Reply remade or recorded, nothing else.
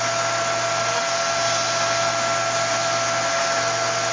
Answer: recorded